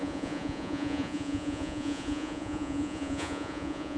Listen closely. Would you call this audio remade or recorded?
remade